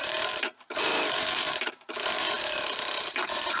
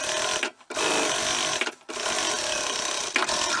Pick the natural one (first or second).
second